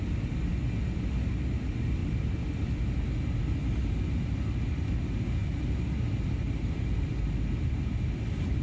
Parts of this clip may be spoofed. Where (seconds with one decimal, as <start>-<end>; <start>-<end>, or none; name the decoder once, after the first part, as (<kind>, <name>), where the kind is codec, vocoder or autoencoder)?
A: none